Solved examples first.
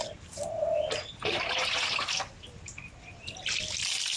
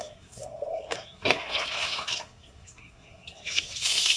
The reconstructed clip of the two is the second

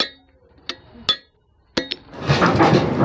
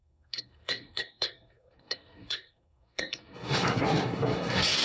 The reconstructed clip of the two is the second